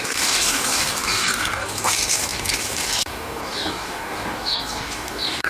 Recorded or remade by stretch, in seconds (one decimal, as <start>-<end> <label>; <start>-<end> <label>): 0.0-5.5 remade